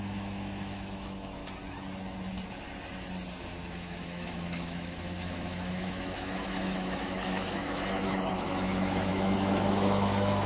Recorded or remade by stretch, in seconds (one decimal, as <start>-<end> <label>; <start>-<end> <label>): 0.0-1.4 remade; 1.4-3.4 recorded; 3.4-10.5 remade